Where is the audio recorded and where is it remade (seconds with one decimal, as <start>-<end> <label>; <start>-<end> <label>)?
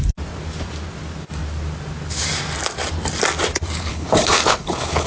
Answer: 0.0-3.9 recorded; 3.9-5.1 remade